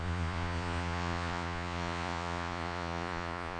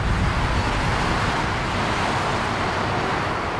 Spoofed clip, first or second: first